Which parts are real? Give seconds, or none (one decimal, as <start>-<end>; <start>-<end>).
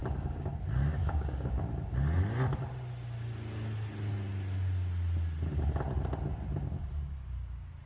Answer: 0.5-1.0; 1.6-7.9